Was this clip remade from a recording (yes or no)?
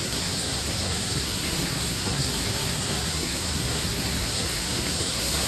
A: yes